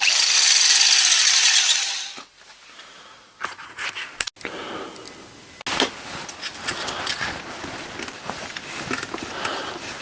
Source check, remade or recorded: recorded